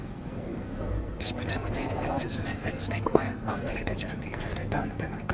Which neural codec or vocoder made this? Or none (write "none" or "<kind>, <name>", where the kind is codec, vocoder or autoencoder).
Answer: codec, SNAC